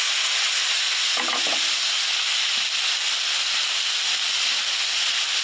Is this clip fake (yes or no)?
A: no